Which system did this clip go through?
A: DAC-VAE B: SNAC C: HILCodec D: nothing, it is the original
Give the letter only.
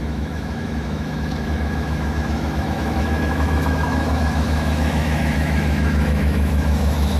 A